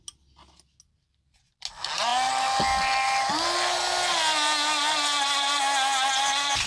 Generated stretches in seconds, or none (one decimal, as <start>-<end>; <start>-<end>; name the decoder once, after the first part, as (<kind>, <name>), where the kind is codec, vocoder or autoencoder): none